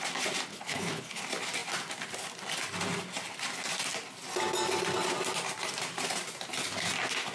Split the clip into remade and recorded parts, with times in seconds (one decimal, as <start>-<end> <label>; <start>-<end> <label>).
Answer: 0.0-0.5 recorded; 0.5-1.2 remade; 1.2-7.3 recorded

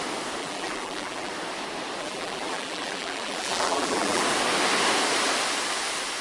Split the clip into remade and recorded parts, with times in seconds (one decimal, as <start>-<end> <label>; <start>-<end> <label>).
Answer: 0.0-0.4 recorded; 0.4-1.3 remade; 1.3-2.0 recorded; 2.0-4.2 remade; 4.2-6.2 recorded

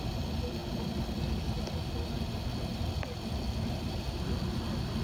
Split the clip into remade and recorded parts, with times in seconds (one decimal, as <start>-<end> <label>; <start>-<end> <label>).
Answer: 0.0-0.6 recorded; 0.6-1.2 remade; 1.2-2.7 recorded; 2.7-3.4 remade; 3.4-5.0 recorded